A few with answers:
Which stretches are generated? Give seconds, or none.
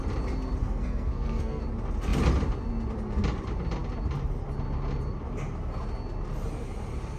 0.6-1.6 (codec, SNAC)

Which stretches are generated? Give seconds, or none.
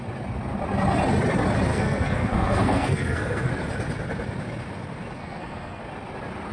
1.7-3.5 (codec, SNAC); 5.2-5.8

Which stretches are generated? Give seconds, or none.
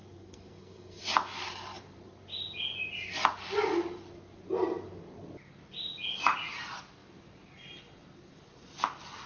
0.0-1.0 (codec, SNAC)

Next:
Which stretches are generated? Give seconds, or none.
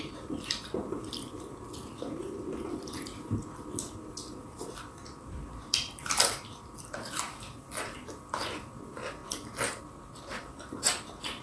0.0-9.2 (vocoder, BigVGAN v2); 9.8-11.4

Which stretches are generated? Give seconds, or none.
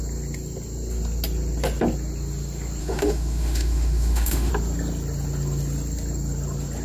2.8-4.5 (autoencoder, DAC-VAE)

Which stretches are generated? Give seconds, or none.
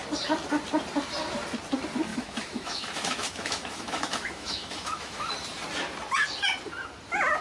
2.1-5.3 (autoencoder, DAC-VAE)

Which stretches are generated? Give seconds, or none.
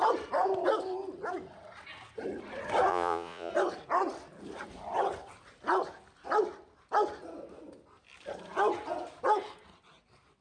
2.9-3.5 (vocoder, Vocos)